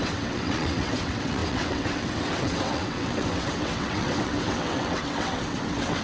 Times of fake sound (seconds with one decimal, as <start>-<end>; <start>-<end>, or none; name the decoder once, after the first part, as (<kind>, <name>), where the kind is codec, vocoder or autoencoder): 0.0-6.0 (vocoder, WaveNeXt)